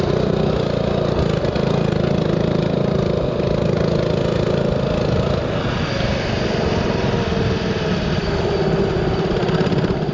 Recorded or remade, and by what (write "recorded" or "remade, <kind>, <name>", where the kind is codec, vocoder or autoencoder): recorded